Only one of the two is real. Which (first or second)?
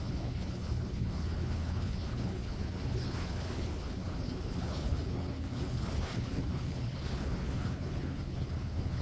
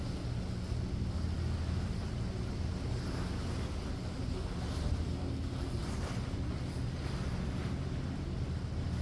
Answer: second